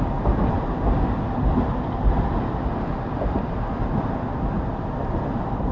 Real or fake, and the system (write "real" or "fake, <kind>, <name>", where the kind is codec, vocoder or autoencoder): real